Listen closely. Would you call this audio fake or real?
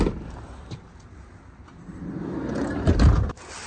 real